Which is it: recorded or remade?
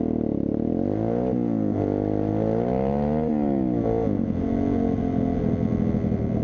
recorded